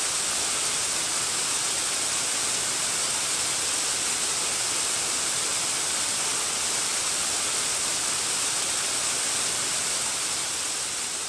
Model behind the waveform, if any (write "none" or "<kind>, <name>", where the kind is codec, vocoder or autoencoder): none